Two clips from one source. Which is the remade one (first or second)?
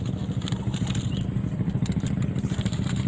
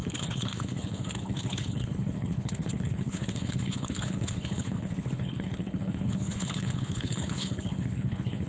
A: second